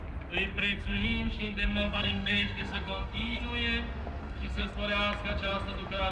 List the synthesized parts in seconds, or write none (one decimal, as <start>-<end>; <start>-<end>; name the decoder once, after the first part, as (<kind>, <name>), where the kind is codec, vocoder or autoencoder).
0.5-3.4 (codec, SNAC); 4.2-4.7